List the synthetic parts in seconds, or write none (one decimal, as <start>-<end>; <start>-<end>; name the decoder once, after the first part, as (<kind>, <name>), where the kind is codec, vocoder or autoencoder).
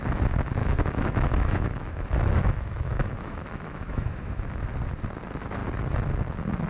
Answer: 0.6-4.6 (autoencoder, DAC-VAE)